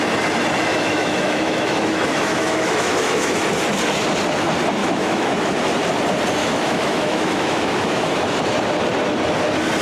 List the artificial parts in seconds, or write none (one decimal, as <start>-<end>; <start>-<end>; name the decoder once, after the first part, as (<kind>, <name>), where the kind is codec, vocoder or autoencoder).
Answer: 0.7-3.4 (autoencoder, DAC-VAE); 4.8-5.5; 6.4-8.4